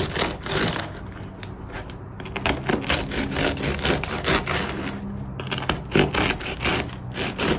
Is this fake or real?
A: real